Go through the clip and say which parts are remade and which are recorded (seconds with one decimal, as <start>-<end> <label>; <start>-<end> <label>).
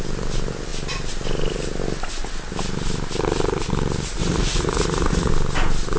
0.0-4.2 recorded; 4.2-5.3 remade; 5.3-6.0 recorded